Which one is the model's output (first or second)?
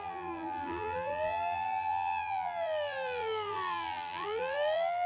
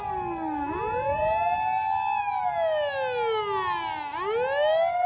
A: first